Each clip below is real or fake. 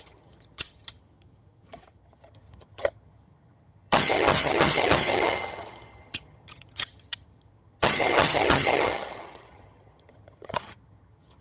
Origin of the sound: fake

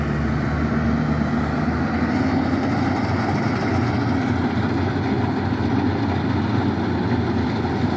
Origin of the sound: real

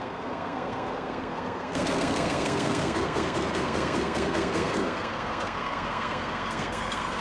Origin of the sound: fake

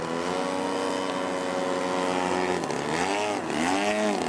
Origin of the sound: real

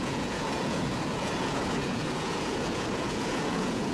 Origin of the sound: fake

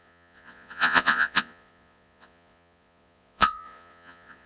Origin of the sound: fake